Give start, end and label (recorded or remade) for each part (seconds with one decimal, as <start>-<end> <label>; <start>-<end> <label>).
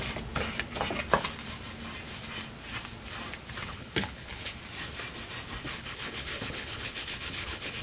0.0-3.6 recorded; 3.6-4.5 remade; 4.5-5.6 recorded; 5.6-7.8 remade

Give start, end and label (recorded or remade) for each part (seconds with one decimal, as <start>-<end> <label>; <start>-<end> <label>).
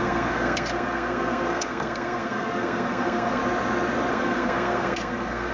0.0-3.4 remade; 3.4-4.1 recorded; 4.1-5.5 remade